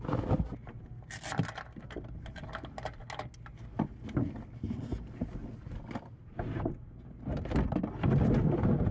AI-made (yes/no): no